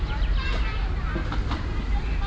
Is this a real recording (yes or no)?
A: yes